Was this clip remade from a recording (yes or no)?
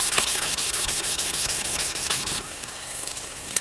yes